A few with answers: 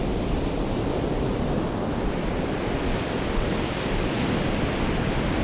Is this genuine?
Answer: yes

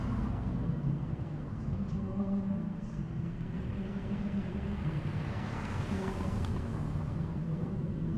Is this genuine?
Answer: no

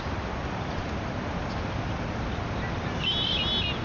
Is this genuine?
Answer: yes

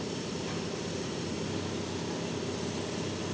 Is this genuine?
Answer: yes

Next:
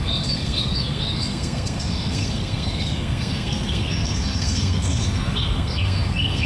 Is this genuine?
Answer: no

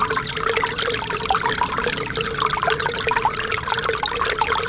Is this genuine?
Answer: yes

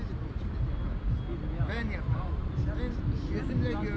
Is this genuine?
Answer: yes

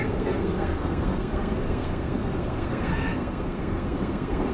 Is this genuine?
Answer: no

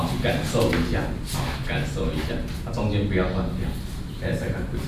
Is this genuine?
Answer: yes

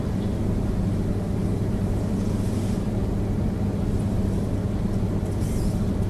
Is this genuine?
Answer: yes